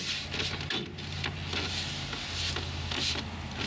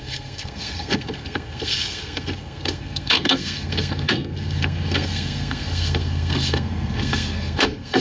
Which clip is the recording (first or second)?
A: first